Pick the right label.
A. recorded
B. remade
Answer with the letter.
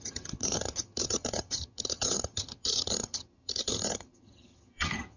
B